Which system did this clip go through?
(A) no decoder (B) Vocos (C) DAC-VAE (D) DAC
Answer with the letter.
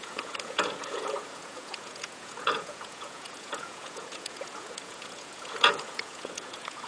B